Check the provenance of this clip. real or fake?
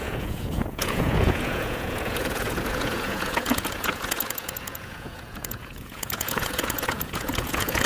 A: fake